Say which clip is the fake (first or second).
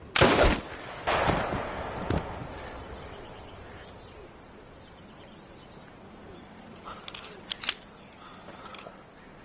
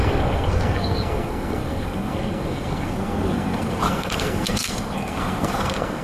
second